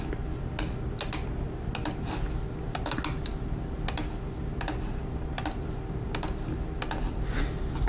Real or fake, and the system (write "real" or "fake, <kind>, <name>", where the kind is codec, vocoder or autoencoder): real